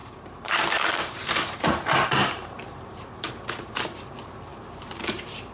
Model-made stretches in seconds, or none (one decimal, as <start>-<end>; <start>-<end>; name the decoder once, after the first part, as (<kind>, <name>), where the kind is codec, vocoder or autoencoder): 0.0-5.5 (vocoder, BigVGAN v2)